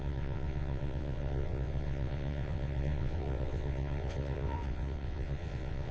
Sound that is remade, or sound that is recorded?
remade